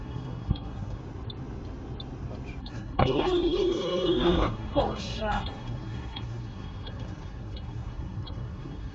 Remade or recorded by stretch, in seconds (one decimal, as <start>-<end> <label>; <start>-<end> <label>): 0.0-1.0 remade; 1.0-2.6 recorded; 2.6-8.9 remade